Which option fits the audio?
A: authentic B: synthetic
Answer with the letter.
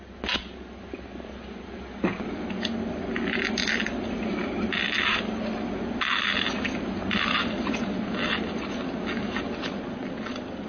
A